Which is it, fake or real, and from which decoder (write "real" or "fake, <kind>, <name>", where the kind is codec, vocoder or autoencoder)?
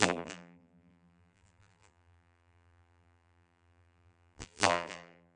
fake, vocoder, BigVGAN v2